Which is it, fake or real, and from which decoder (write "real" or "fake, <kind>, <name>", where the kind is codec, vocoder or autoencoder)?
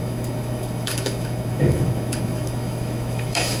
fake, autoencoder, DAC-VAE